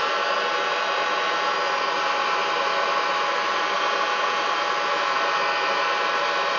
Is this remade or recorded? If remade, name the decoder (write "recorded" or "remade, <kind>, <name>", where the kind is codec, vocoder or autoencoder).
recorded